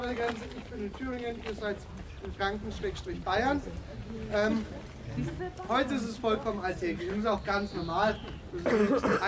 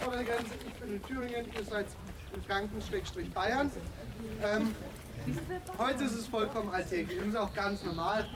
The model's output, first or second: second